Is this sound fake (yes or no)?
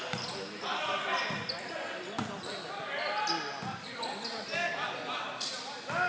no